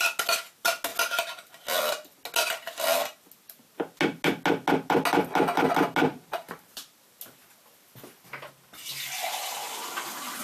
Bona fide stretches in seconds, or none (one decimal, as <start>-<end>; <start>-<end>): 0.0-6.1; 7.2-10.4